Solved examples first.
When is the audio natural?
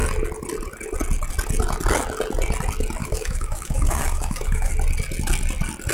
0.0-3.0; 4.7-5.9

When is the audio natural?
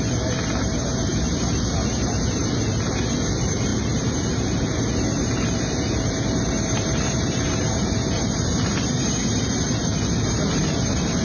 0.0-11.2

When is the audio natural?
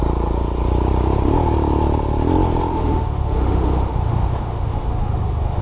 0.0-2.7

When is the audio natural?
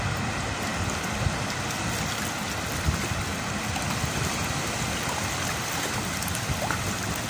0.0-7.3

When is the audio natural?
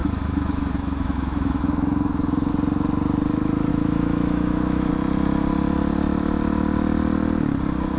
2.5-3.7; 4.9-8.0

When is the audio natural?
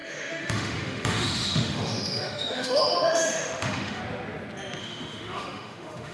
4.0-4.8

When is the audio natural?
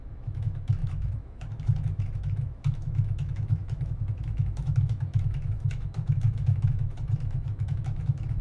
none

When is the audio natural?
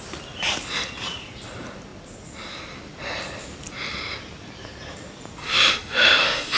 0.0-5.4